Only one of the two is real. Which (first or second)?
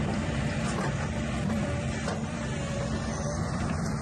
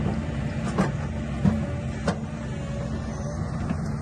second